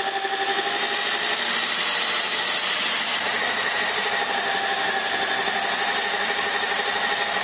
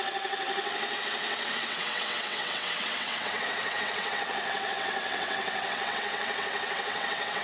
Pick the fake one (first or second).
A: second